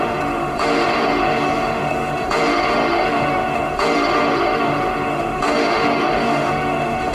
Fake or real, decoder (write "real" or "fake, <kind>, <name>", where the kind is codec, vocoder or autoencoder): fake, autoencoder, DAC-VAE